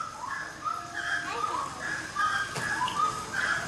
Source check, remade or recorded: recorded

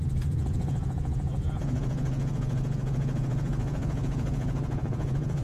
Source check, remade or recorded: remade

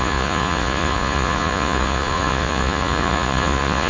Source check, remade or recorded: remade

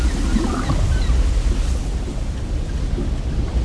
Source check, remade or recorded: recorded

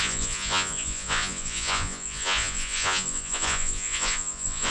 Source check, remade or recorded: remade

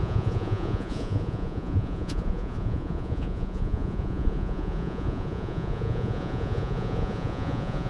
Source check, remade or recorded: remade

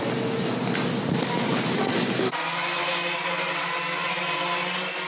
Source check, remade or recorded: recorded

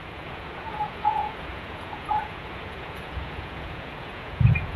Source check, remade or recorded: remade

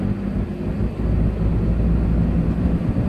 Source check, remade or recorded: recorded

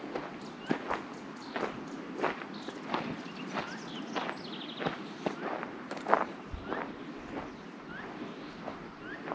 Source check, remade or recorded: recorded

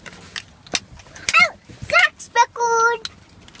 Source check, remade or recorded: recorded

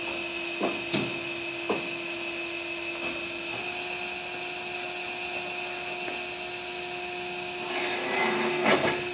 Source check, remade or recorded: recorded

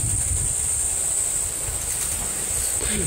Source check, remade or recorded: recorded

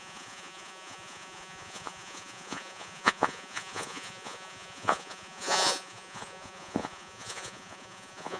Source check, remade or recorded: remade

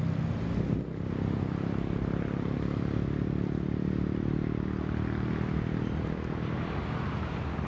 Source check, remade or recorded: recorded